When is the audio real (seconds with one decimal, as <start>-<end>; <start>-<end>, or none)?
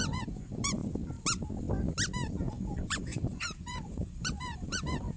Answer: 0.8-2.4